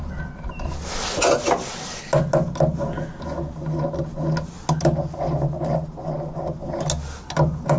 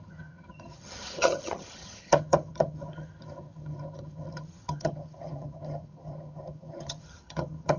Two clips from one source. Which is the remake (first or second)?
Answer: second